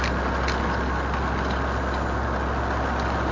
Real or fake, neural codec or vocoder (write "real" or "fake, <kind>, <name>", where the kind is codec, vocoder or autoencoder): real